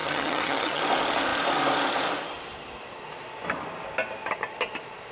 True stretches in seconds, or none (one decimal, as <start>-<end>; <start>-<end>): 0.8-5.1